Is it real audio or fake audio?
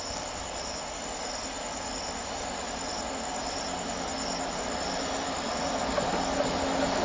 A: real